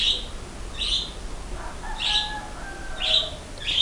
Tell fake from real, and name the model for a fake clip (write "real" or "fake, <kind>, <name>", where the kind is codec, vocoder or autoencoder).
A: real